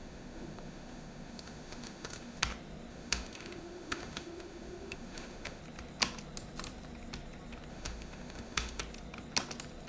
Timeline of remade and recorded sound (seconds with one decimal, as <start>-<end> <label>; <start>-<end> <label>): 0.0-2.4 remade; 2.4-2.9 recorded; 2.9-5.6 remade; 5.6-7.7 recorded; 7.7-8.8 remade; 8.8-9.9 recorded